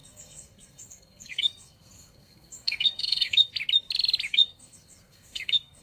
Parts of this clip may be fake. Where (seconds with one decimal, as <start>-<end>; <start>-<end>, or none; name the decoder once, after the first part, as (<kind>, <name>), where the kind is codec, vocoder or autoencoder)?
0.0-3.5 (codec, SNAC); 4.3-5.8